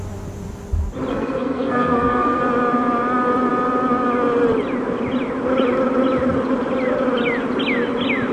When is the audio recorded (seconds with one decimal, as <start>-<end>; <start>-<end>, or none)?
0.0-1.1; 2.4-8.3